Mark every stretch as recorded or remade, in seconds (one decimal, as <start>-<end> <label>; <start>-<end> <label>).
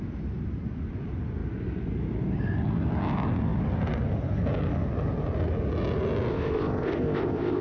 0.0-6.3 recorded; 6.3-7.6 remade